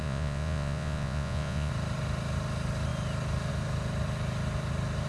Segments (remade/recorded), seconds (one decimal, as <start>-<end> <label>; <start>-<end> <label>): 0.0-1.7 remade; 1.7-5.1 recorded